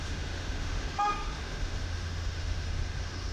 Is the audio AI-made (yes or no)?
yes